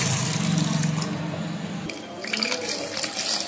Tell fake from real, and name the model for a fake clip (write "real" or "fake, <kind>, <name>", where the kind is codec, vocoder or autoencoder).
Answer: real